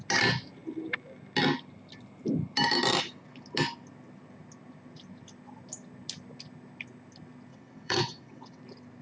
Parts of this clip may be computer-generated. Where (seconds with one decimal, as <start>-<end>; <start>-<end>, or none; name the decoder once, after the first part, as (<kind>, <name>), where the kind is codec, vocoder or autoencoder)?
7.5-8.6 (vocoder, WaveNeXt)